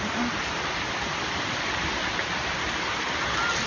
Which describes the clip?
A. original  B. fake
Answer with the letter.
A